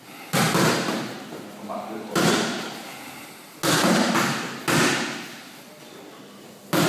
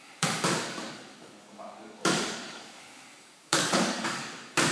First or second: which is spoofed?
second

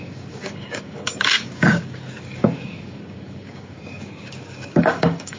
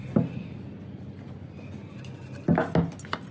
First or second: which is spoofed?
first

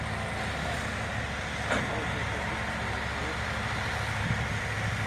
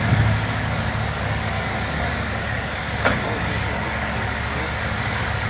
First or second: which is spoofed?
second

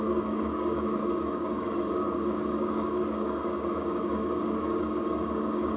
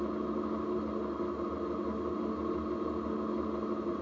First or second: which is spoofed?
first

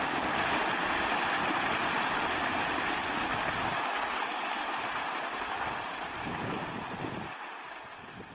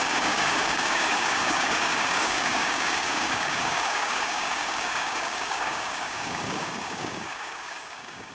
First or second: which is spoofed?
second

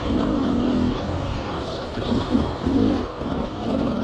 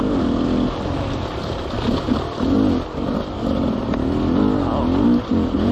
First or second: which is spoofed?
first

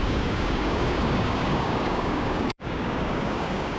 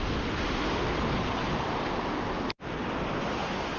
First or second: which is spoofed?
first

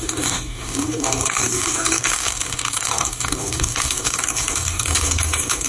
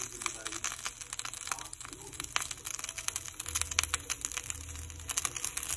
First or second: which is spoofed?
first